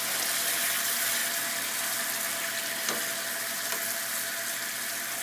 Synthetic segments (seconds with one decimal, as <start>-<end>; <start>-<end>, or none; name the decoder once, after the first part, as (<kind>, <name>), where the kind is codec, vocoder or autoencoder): none